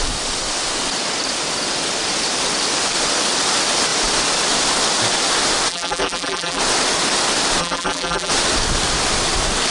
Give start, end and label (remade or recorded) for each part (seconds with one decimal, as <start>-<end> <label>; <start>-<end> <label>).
0.0-5.7 recorded; 5.7-6.6 remade; 6.6-7.6 recorded; 7.6-8.3 remade; 8.3-9.7 recorded